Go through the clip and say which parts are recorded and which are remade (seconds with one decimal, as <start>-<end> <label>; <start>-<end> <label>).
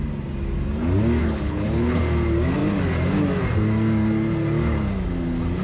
0.0-1.2 recorded; 1.2-2.0 remade; 2.0-5.6 recorded